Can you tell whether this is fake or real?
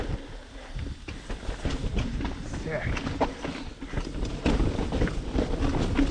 real